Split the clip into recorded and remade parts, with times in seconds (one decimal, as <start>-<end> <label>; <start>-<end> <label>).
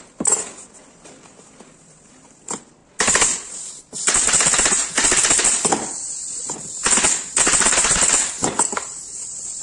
0.0-9.6 recorded